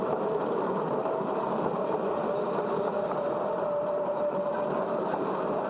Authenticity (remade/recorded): remade